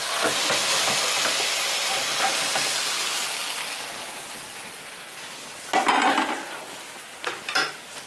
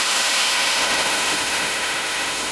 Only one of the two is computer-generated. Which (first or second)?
second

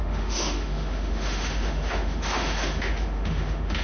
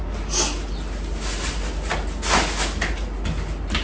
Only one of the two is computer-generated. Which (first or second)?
first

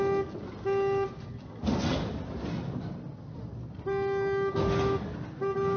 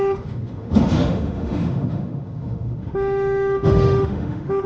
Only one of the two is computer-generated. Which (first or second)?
second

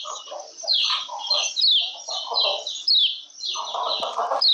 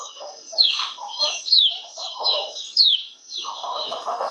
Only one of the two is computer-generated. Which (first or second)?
second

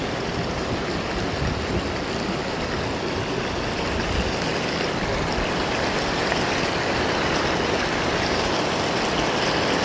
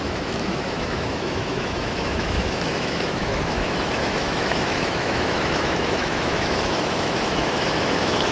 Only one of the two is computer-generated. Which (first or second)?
second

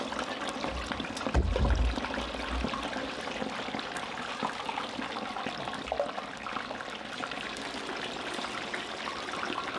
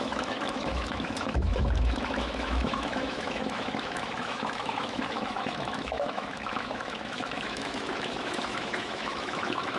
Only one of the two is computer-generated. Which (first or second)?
second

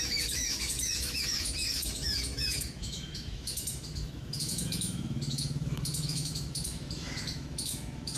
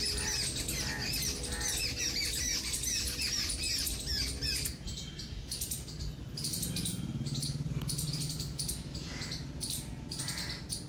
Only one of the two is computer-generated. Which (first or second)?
first